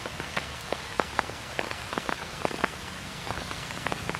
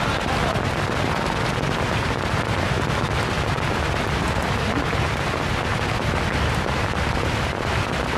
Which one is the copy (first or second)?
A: first